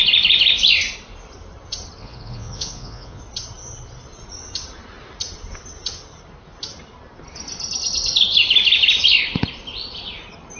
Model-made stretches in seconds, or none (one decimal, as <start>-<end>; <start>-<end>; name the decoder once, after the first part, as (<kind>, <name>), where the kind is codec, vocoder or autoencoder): 2.0-3.2 (vocoder, Vocos)

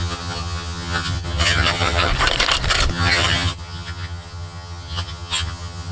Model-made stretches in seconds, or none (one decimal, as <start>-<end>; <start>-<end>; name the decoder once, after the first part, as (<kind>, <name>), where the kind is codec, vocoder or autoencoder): 0.0-2.1 (vocoder, HiFi-GAN); 2.9-5.9

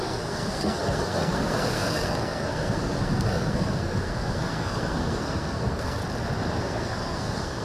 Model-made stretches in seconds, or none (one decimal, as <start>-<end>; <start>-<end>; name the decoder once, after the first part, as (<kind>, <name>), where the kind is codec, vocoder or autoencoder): 0.0-6.0 (codec, SNAC); 6.6-7.6

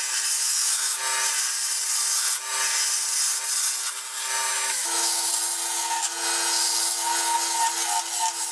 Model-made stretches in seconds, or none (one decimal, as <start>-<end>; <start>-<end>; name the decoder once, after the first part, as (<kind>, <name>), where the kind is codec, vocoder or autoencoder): 0.4-1.0 (autoencoder, DAC-VAE); 4.5-5.3

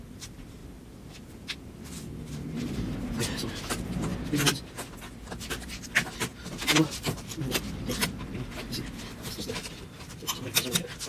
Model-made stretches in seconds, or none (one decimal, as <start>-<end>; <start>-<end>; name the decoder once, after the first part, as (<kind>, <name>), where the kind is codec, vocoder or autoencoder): 0.0-0.6 (vocoder, BigVGAN v2); 2.1-4.1; 5.8-11.1

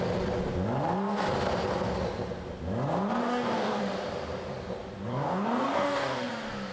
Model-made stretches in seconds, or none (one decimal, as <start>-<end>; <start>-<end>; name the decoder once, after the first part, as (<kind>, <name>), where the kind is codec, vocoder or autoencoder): 3.2-3.8 (codec, DAC); 5.1-6.3

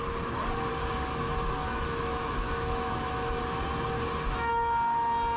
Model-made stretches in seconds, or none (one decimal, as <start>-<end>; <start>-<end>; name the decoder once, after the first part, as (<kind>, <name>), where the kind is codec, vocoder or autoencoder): 0.7-3.4 (autoencoder, DAC-VAE)

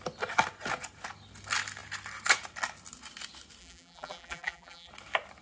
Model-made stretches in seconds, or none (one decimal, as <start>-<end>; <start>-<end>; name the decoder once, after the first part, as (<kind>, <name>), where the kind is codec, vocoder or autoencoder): 3.6-4.9 (vocoder, BigVGAN v2)